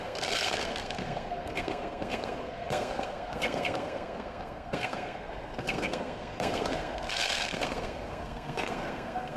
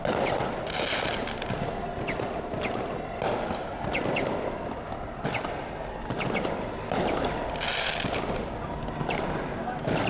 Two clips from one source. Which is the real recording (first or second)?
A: second